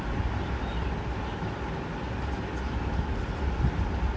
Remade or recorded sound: recorded